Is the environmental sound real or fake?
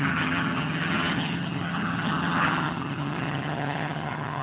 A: fake